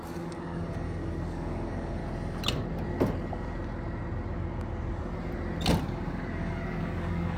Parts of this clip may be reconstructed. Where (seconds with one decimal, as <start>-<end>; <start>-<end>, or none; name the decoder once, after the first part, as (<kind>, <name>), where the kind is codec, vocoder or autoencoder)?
0.0-2.0 (codec, DAC); 5.8-7.4